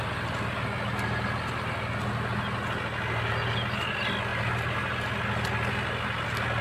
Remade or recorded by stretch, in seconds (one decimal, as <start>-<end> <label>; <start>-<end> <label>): 0.0-6.6 recorded